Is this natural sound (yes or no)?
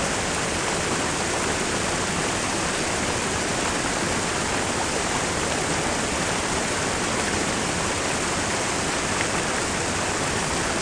yes